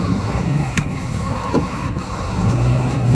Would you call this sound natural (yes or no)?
no